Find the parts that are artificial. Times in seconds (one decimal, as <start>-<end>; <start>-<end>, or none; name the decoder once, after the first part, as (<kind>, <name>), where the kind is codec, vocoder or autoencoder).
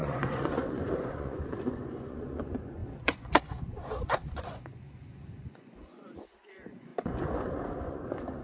0.0-8.4 (vocoder, Vocos)